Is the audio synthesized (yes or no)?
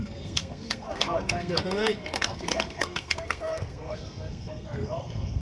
yes